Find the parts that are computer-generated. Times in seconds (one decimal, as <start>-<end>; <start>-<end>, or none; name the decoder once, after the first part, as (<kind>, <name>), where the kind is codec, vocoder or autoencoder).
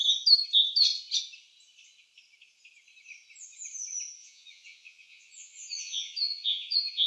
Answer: 4.2-7.1 (vocoder, Vocos)